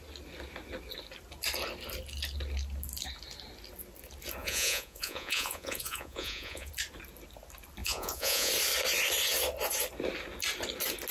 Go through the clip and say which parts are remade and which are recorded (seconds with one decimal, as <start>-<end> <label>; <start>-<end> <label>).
0.0-4.4 recorded; 4.4-6.7 remade; 6.7-7.8 recorded; 7.8-8.5 remade; 8.5-11.1 recorded

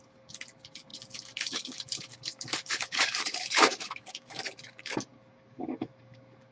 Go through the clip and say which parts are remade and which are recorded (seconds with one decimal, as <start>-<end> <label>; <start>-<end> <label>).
0.0-6.5 remade

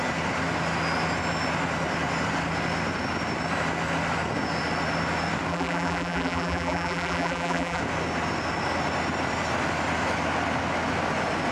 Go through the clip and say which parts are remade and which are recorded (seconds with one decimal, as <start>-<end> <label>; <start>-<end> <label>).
0.0-5.5 recorded; 5.5-7.8 remade; 7.8-11.5 recorded

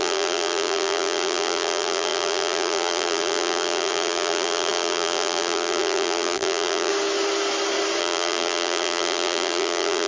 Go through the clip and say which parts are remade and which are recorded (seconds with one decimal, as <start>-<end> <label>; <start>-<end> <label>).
0.0-6.9 remade; 6.9-8.0 recorded; 8.0-10.1 remade

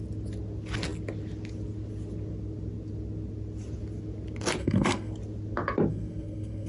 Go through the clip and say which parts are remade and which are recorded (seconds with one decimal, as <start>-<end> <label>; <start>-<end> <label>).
0.0-4.6 recorded; 4.6-5.1 remade; 5.1-5.9 recorded; 5.9-6.7 remade

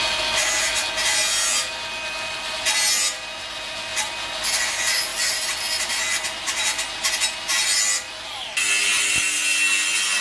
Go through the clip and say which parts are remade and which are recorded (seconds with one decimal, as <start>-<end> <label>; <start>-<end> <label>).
0.0-10.2 recorded

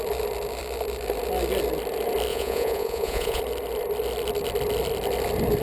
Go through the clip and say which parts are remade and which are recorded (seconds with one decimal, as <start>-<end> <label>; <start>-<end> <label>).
0.0-2.3 recorded; 2.3-3.4 remade; 3.4-5.6 recorded

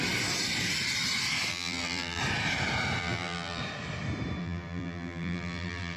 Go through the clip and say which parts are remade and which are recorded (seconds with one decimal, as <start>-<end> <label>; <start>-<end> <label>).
0.0-1.5 recorded; 1.5-2.2 remade; 2.2-3.0 recorded; 3.0-3.6 remade; 3.6-4.4 recorded; 4.4-6.0 remade